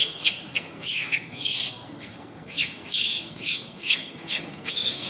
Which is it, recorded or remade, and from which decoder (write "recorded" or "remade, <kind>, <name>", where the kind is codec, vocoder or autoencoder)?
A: remade, codec, SNAC